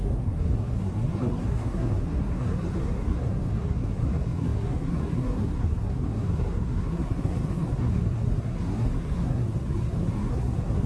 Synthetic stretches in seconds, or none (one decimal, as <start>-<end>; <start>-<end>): 0.0-10.9